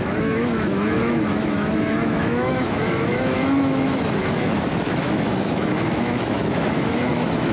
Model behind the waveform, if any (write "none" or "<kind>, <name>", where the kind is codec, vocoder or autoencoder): autoencoder, DAC-VAE